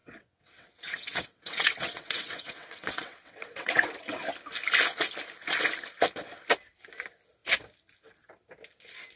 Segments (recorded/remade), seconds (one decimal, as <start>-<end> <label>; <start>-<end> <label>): 0.0-3.9 remade; 3.9-9.2 recorded